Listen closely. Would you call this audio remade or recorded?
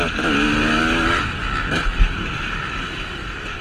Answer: recorded